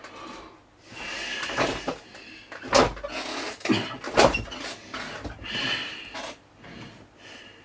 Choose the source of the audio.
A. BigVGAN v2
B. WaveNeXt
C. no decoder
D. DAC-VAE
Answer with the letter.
C